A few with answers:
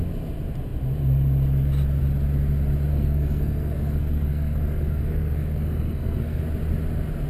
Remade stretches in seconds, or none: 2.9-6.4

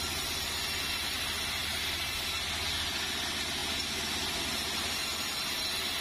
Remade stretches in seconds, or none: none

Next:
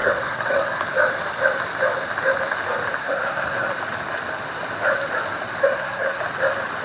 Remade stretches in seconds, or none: 0.0-0.8; 3.0-3.7; 5.6-6.2